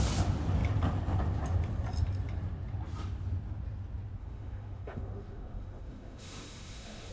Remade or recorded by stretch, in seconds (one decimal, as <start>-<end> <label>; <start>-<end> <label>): 0.0-4.2 recorded; 4.2-7.1 remade